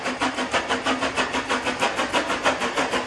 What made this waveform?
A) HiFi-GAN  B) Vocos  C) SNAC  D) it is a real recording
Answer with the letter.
D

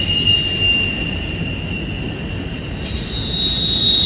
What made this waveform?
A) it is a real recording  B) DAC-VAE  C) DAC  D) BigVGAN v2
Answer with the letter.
A